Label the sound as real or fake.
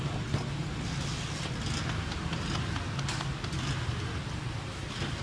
real